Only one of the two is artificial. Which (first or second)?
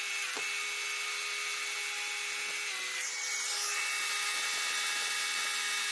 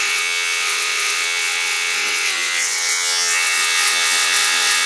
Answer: second